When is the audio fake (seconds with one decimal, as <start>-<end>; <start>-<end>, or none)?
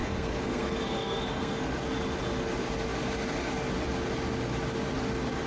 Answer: 0.0-1.7